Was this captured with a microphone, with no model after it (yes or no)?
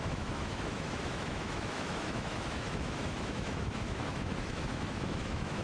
no